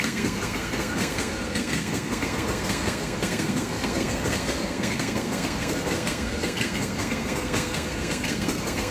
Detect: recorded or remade remade